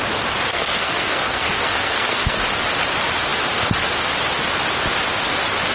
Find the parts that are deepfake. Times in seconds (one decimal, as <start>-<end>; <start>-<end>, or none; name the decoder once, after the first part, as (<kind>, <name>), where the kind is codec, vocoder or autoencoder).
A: 0.5-2.4 (codec, SNAC)

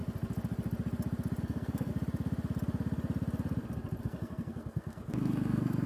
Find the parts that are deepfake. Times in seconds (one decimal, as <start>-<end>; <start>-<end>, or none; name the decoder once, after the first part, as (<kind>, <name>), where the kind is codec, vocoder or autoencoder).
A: 1.4-1.9 (codec, SNAC); 4.0-5.9

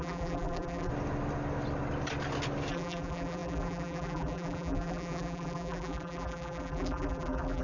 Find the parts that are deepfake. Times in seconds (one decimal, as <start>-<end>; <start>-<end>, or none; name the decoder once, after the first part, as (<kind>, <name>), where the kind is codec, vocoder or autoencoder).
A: 0.0-0.9 (vocoder, BigVGAN v2); 2.7-7.6